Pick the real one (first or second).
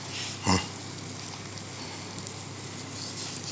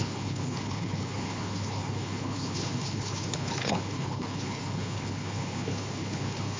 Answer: first